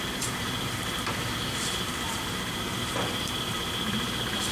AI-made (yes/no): yes